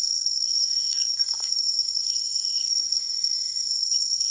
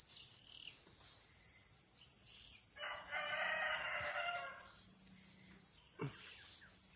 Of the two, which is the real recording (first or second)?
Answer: second